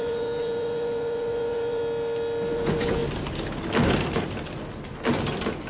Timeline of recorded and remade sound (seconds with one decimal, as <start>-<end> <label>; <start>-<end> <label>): 0.0-1.8 remade; 1.8-2.5 recorded; 2.5-3.0 remade; 3.0-5.7 recorded

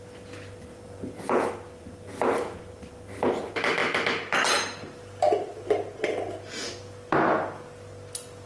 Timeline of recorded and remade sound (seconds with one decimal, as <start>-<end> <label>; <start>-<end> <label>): 0.0-0.7 recorded; 0.7-1.5 remade; 1.5-8.5 recorded

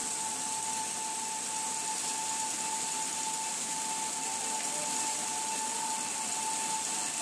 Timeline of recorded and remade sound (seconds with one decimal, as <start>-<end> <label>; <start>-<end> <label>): 0.0-7.2 recorded